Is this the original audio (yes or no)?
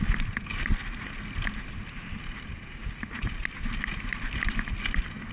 yes